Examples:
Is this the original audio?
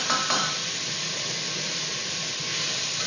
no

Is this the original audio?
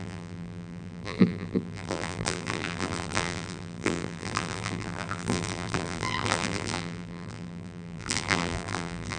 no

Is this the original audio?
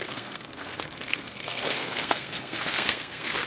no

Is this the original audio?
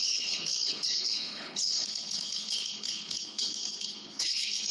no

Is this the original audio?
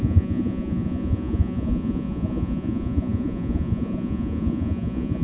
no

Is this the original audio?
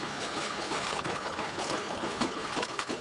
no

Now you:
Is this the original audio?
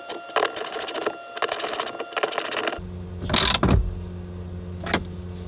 yes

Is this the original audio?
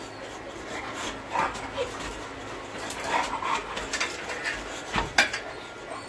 yes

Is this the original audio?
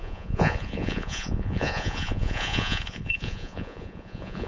no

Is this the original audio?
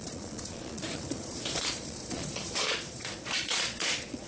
no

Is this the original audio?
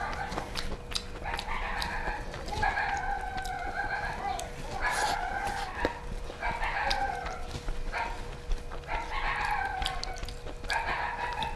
yes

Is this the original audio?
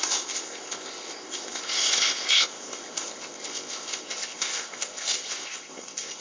no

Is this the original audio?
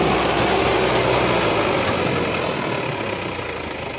yes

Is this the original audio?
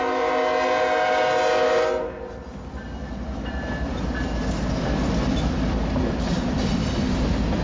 yes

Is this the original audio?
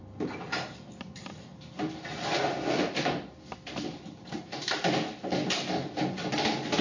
yes